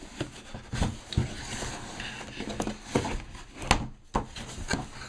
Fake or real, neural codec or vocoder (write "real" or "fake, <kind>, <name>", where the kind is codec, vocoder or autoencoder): real